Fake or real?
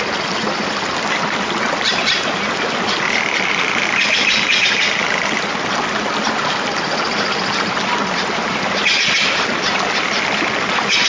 real